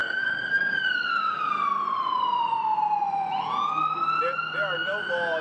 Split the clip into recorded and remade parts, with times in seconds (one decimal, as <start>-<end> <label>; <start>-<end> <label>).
0.0-1.5 remade; 1.5-5.4 recorded